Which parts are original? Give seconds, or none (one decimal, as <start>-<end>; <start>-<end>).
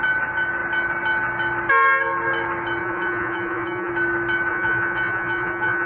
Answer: 0.0-2.8; 3.9-4.5